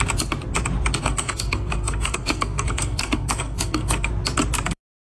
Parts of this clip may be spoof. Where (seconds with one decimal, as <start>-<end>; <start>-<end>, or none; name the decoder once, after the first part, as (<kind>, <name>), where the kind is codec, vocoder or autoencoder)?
1.0-4.1 (codec, SNAC)